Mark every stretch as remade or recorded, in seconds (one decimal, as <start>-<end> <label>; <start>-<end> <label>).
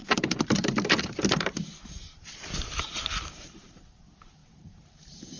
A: 0.0-1.7 remade; 1.7-3.4 recorded; 3.4-5.4 remade